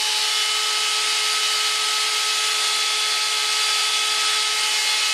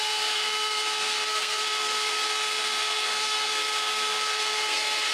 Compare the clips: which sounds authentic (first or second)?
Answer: first